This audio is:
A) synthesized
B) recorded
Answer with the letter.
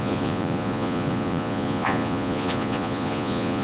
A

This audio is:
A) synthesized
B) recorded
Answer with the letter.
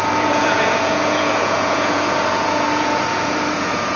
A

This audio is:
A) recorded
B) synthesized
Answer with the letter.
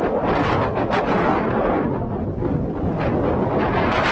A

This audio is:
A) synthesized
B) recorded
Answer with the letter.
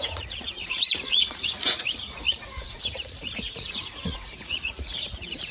A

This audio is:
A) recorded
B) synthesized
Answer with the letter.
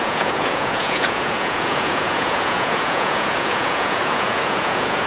B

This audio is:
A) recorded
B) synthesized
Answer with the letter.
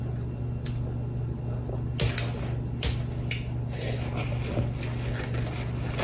A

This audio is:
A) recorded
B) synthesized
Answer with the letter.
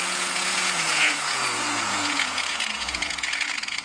B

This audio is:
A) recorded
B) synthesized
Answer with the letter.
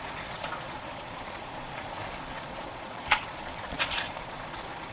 B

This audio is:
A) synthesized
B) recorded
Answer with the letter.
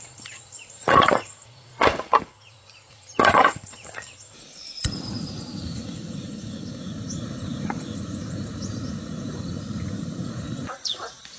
A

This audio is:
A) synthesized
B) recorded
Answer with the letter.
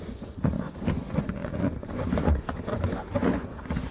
A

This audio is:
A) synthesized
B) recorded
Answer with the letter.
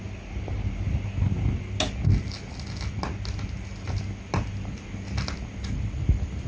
B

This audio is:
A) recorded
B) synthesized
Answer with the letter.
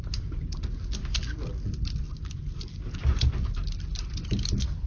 A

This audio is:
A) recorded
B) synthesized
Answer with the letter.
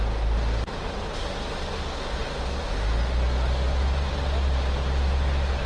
A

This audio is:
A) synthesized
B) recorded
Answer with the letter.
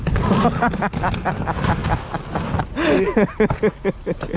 B